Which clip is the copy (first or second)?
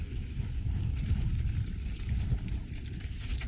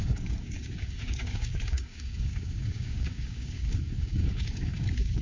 second